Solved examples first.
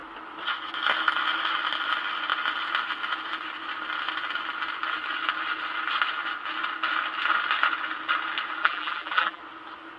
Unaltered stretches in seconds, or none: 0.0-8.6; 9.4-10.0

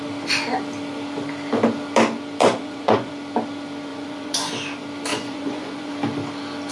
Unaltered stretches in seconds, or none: 0.0-2.4; 3.1-3.9; 4.5-5.1; 5.9-6.7

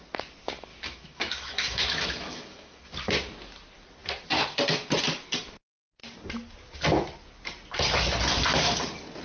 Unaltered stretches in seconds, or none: 0.0-0.7; 2.8-9.2

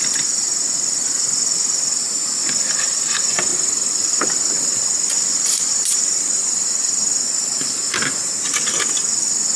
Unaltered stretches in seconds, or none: 0.0-3.5; 8.3-9.6

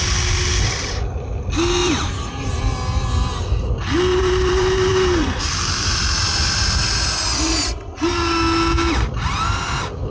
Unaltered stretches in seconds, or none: 0.0-1.8; 2.6-4.1; 5.4-10.1

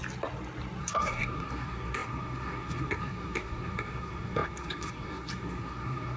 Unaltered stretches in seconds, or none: 0.0-0.8